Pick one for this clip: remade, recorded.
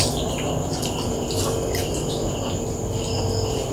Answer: recorded